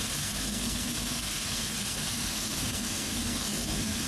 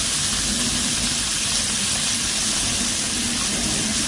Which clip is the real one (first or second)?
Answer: second